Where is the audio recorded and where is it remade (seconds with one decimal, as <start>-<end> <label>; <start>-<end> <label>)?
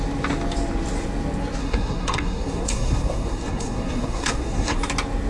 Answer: 0.0-1.6 recorded; 1.6-4.8 remade; 4.8-5.3 recorded